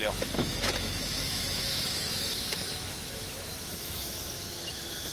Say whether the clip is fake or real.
fake